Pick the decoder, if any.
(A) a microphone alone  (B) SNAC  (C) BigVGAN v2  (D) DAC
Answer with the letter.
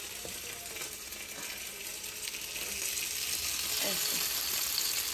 A